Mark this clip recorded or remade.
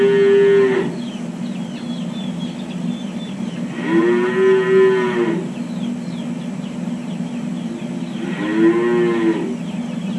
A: recorded